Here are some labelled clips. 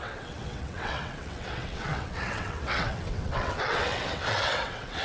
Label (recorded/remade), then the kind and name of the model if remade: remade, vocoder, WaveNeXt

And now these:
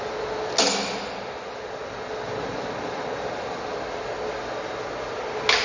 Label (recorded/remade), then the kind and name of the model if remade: recorded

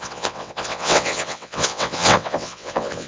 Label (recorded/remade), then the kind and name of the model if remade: remade, vocoder, WaveNeXt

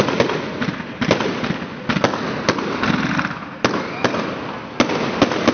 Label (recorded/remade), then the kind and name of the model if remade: recorded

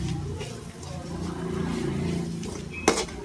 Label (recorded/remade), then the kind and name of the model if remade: recorded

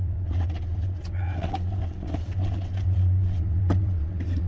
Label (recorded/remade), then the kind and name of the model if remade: remade, vocoder, WaveNeXt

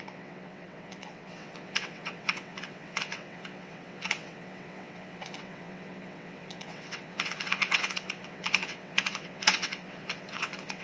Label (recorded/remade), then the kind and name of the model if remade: remade, vocoder, WaveNeXt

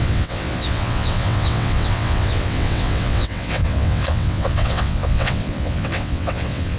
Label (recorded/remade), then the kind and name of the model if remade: remade, vocoder, WaveNeXt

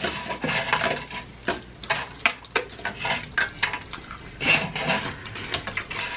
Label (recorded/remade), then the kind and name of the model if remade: recorded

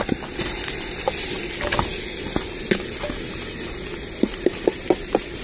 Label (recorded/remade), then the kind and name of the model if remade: recorded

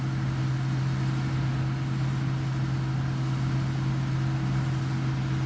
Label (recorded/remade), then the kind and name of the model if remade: recorded